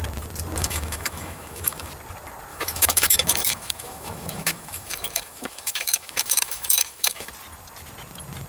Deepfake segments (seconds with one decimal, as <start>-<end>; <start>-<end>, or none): 0.6-1.9; 2.5-7.3